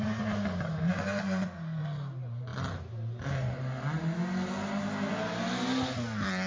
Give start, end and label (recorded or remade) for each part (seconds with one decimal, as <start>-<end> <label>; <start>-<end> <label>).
0.0-6.5 recorded